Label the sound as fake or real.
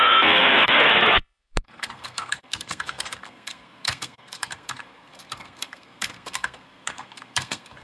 fake